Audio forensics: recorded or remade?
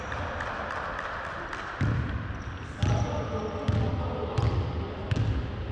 recorded